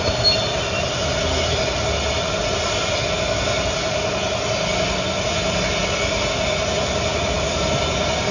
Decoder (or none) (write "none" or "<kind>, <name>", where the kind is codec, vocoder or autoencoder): none